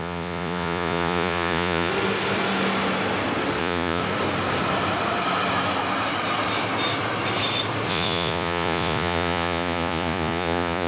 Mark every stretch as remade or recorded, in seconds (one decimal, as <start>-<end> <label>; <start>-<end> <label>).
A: 0.0-1.9 remade; 1.9-3.6 recorded; 3.6-4.0 remade; 4.0-7.9 recorded; 7.9-10.9 remade